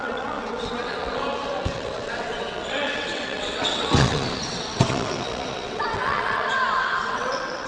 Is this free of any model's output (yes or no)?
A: no